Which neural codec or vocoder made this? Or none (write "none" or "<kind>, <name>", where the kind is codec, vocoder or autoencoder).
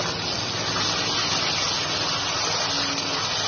none